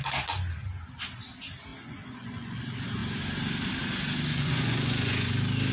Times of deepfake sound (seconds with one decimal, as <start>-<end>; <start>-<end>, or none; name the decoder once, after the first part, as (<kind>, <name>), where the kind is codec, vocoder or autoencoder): 1.7-2.6 (vocoder, Vocos); 4.3-5.3